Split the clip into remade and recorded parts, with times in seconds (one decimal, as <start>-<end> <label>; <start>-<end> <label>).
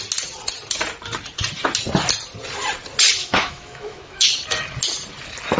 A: 0.0-3.2 recorded; 3.2-4.3 remade; 4.3-5.6 recorded